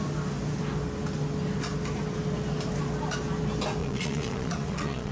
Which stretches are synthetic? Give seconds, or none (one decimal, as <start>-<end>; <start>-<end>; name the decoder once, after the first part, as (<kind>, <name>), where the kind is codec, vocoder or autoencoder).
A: 3.8-5.1 (vocoder, Vocos)